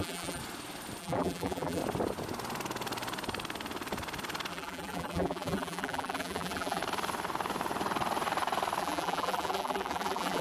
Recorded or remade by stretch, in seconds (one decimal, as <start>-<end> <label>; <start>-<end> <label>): 0.0-0.4 remade; 0.4-1.0 recorded; 1.0-1.8 remade; 1.8-4.5 recorded; 4.5-6.8 remade; 6.8-8.8 recorded; 8.8-10.4 remade